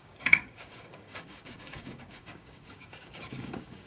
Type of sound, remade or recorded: remade